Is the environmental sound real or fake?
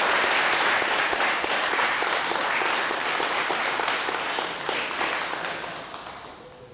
real